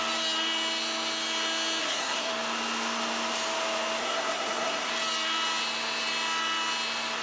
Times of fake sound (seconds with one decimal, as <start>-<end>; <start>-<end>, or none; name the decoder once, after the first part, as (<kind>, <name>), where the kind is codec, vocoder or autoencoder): 1.8-2.3 (codec, SNAC); 4.0-4.9